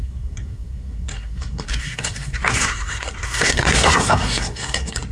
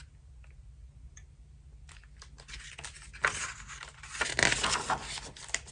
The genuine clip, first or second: second